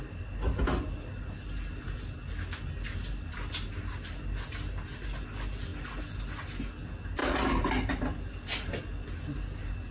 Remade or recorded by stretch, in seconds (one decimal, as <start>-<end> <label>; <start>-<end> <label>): 0.0-9.9 recorded